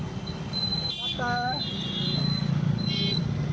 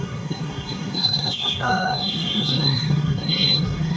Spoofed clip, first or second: second